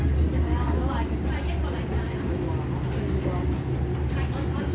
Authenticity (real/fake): real